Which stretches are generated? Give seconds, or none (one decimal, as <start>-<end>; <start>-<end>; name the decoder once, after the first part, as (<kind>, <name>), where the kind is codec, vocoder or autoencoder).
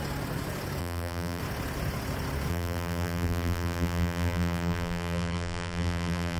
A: 0.8-1.4 (vocoder, BigVGAN v2); 2.5-6.4